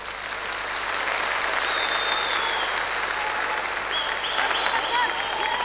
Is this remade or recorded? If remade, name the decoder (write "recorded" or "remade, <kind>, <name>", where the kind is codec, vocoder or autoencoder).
recorded